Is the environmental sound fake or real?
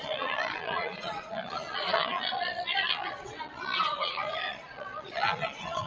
fake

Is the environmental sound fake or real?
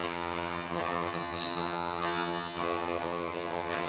fake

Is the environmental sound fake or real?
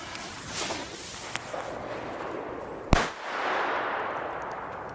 real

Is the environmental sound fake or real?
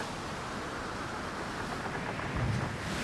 real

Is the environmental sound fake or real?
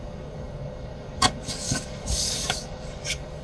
fake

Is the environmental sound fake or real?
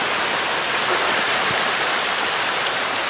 fake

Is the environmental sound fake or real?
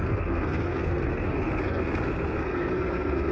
fake